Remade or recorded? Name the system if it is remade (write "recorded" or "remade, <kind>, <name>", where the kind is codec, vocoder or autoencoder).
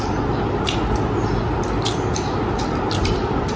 recorded